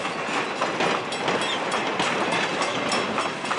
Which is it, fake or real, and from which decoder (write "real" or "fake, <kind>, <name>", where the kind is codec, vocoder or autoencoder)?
real